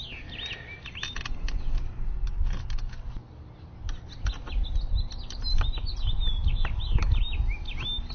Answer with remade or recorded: recorded